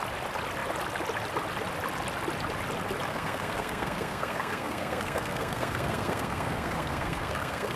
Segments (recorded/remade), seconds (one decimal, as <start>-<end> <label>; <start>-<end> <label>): 0.0-3.1 recorded; 3.1-7.8 remade